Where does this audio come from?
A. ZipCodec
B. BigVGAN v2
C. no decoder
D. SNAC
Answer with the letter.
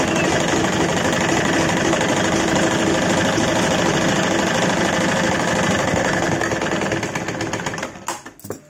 C